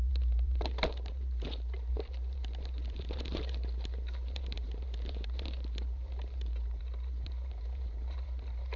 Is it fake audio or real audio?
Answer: fake